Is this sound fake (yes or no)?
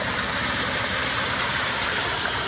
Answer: yes